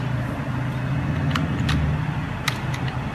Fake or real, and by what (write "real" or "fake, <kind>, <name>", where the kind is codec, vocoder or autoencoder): real